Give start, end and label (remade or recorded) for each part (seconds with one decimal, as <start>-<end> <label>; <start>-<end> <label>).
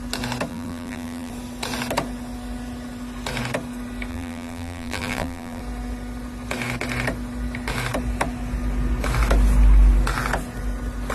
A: 0.0-0.5 recorded; 0.5-1.3 remade; 1.3-4.1 recorded; 4.1-5.6 remade; 5.6-11.1 recorded